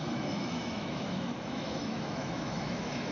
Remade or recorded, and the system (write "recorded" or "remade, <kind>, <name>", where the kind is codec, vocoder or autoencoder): remade, autoencoder, DAC-VAE